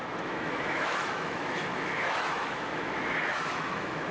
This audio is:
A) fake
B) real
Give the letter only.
A